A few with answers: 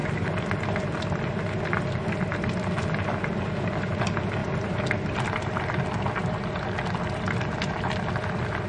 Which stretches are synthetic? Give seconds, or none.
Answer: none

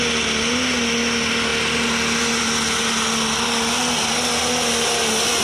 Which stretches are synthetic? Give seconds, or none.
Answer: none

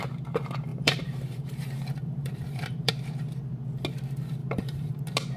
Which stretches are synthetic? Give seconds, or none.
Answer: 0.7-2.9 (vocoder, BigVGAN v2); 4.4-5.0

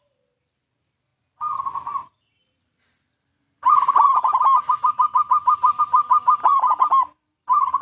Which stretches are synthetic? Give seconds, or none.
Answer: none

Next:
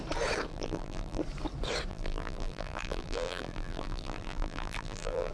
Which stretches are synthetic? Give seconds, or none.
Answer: 0.5-1.2 (vocoder, BigVGAN v2); 1.9-5.3

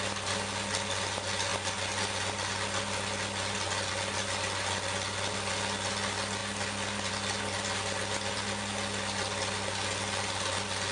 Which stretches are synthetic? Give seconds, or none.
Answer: none

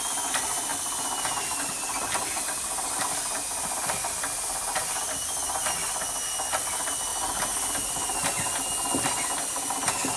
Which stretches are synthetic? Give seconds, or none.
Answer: 0.7-4.4 (vocoder, BigVGAN v2)

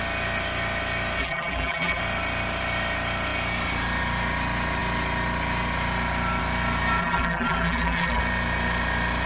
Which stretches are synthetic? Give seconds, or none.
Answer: 1.2-2.0 (vocoder, BigVGAN v2); 7.0-8.2